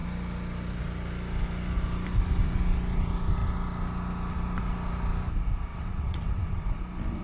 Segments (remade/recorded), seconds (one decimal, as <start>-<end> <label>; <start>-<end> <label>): 0.0-5.7 recorded; 5.7-6.8 remade; 6.8-7.2 recorded